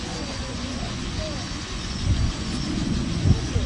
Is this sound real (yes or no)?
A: no